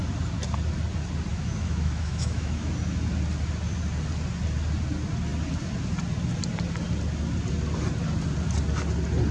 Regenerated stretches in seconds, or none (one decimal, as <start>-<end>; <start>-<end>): 1.3-2.7